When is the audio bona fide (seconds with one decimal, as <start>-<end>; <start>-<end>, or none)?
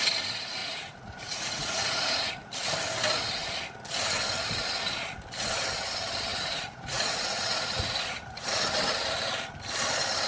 0.0-0.6; 2.3-6.3; 8.5-10.3